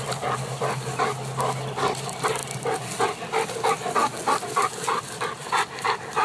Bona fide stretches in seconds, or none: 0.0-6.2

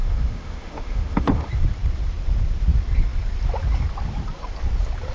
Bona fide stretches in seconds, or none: 1.5-5.1

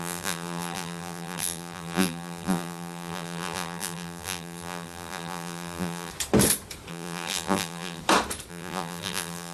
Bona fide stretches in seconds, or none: 6.1-6.9; 8.0-8.5

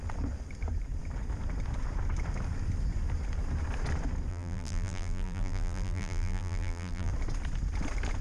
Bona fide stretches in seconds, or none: 0.0-4.3; 7.1-8.2

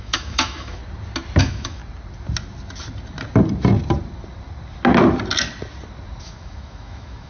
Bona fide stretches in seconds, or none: 0.8-1.4; 1.8-6.2

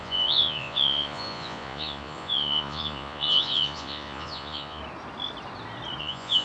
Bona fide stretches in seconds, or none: 4.8-6.0